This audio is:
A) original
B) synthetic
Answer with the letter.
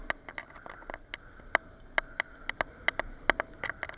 A